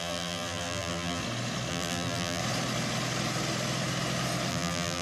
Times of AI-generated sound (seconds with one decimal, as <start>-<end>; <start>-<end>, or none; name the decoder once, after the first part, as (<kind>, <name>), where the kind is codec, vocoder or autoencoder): 0.0-1.2 (vocoder, BigVGAN v2); 1.7-2.4; 4.5-5.0